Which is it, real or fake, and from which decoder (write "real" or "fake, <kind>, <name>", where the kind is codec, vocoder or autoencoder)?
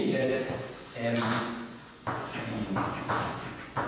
fake, vocoder, Vocos